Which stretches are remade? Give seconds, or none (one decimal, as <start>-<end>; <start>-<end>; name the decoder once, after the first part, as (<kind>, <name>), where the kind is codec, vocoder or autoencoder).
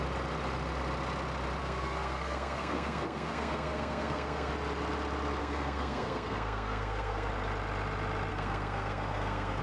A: 1.6-4.5 (codec, SNAC); 5.4-7.3; 8.3-9.6